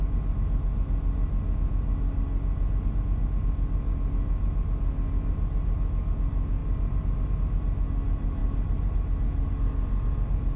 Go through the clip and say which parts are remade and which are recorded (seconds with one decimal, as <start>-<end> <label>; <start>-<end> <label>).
0.0-10.6 recorded